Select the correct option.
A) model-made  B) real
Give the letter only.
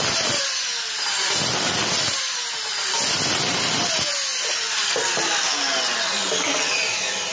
B